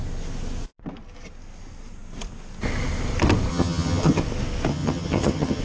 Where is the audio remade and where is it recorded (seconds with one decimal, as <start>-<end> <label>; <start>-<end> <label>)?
0.0-3.5 recorded; 3.5-4.2 remade; 4.2-4.7 recorded; 4.7-5.6 remade